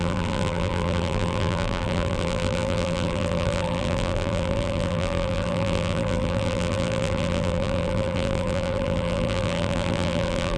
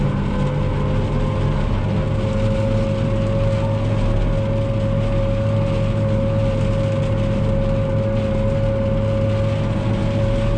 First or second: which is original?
second